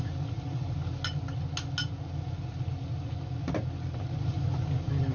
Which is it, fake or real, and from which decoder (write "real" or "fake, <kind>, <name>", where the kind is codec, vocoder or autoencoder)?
real